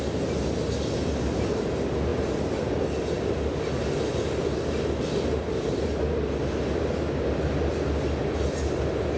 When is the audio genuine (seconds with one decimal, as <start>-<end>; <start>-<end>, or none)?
0.0-9.2